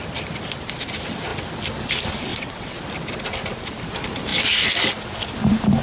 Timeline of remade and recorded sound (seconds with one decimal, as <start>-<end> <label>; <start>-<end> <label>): 0.0-2.3 recorded; 2.3-2.8 remade; 2.8-5.8 recorded